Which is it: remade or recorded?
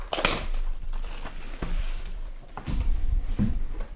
remade